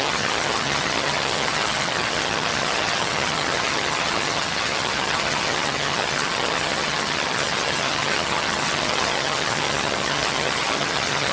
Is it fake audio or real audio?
fake